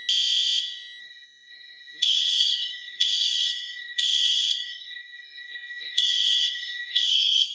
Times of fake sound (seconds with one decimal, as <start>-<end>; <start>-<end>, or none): 1.0-7.5